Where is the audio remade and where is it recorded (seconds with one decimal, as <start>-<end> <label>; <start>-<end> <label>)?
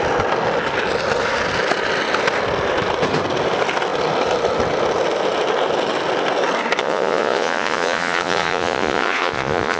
0.0-6.8 recorded; 6.8-9.8 remade